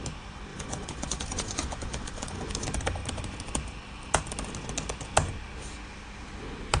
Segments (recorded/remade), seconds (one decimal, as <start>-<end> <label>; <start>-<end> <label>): 0.0-0.5 recorded; 0.5-2.5 remade; 2.5-6.8 recorded